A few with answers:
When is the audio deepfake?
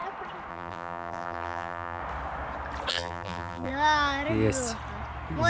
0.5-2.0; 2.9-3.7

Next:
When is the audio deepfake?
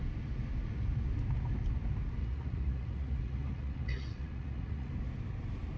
2.2-4.9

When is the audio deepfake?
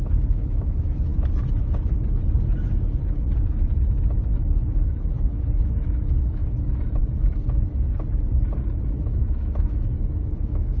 0.0-1.1; 4.9-7.0; 9.0-10.8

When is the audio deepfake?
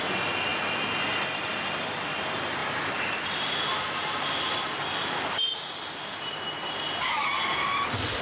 2.6-7.3